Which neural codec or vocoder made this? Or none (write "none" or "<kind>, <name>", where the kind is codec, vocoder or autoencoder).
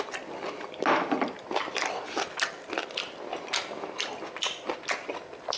none